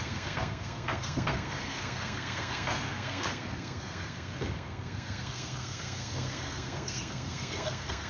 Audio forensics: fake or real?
fake